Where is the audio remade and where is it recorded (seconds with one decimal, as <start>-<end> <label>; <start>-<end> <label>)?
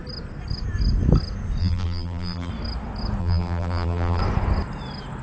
0.0-1.6 recorded; 1.6-2.5 remade; 2.5-3.2 recorded; 3.2-4.2 remade; 4.2-5.2 recorded